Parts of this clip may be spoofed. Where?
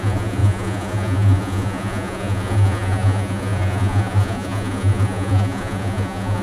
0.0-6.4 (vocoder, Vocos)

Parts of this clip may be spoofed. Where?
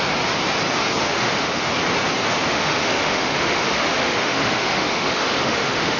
1.0-1.7 (autoencoder, DAC-VAE); 2.5-6.0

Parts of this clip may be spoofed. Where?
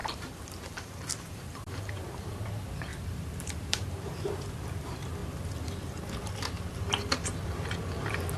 0.0-2.2 (vocoder, BigVGAN v2); 2.9-4.3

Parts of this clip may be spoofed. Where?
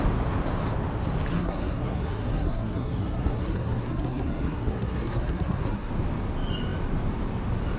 1.3-5.9 (codec, SNAC)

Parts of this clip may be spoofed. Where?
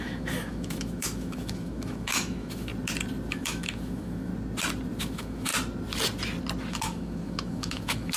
0.0-2.7 (autoencoder, DAC-VAE); 3.3-4.3; 5.0-5.5; 6.7-8.2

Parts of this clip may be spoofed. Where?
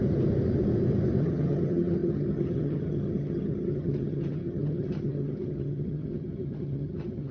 1.2-7.3 (vocoder, HiFi-GAN)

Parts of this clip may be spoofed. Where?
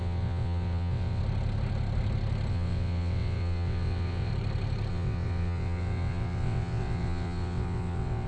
0.0-1.2 (vocoder, WaveNeXt); 2.5-4.3; 4.9-8.3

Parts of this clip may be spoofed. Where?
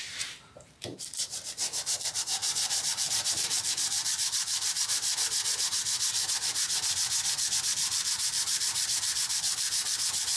0.0-5.1 (vocoder, BigVGAN v2); 7.6-10.4